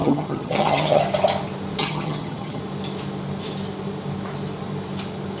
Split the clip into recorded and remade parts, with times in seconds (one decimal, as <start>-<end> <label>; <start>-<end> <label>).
0.0-1.0 remade; 1.0-1.8 recorded; 1.8-2.6 remade; 2.6-5.4 recorded

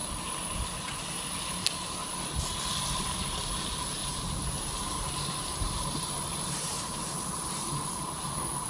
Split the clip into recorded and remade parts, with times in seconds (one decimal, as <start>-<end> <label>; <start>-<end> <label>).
0.0-4.0 recorded; 4.0-8.2 remade; 8.2-8.7 recorded